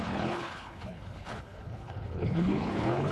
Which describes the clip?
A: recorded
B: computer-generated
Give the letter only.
B